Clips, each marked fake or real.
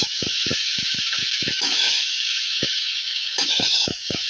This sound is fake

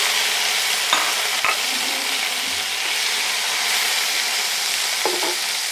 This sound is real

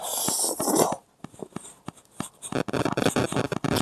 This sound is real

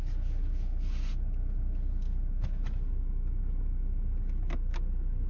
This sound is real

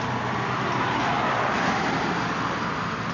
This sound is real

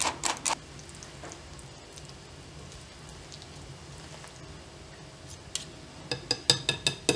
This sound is real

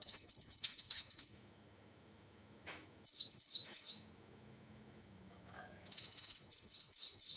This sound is fake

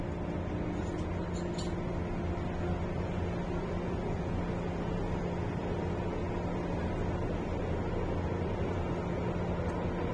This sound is real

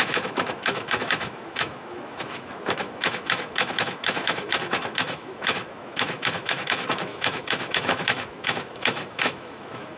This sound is fake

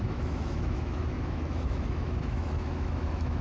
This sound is fake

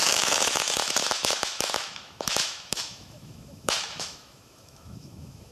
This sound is fake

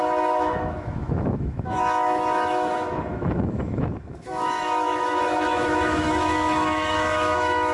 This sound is fake